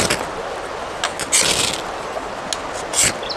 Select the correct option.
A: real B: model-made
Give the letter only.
A